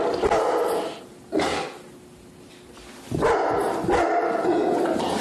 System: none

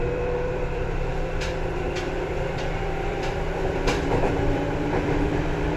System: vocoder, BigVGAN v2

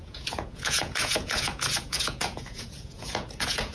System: vocoder, Vocos